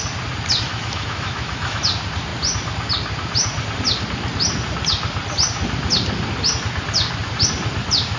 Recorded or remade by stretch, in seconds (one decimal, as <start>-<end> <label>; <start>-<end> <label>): 0.0-0.7 recorded; 0.7-1.8 remade; 1.8-8.2 recorded